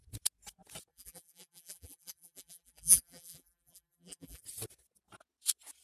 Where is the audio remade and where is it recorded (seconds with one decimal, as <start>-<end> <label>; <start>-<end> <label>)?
0.0-0.9 recorded; 0.9-4.4 remade; 4.4-5.8 recorded